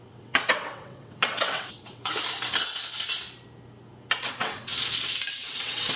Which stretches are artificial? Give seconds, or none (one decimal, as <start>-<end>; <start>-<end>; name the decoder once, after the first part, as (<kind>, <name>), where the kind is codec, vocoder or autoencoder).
0.0-2.1 (vocoder, WaveNeXt); 4.2-4.7; 5.3-6.0